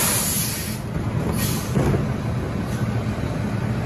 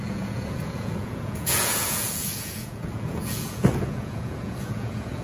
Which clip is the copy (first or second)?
second